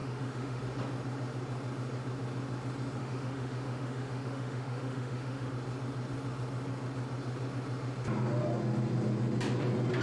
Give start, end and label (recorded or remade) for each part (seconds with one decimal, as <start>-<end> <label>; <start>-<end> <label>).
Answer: 0.0-0.6 remade; 0.6-3.0 recorded; 3.0-5.5 remade; 5.5-10.0 recorded